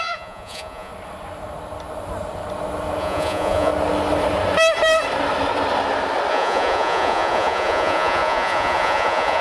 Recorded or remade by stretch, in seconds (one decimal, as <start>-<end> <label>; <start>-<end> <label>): 0.0-0.9 remade; 0.9-3.0 recorded; 3.0-3.7 remade; 3.7-6.3 recorded; 6.3-9.4 remade